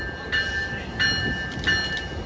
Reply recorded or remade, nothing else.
recorded